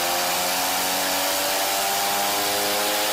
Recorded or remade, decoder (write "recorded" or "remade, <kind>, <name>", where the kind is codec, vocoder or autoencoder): recorded